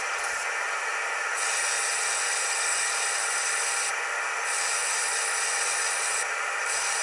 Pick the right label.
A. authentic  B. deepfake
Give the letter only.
A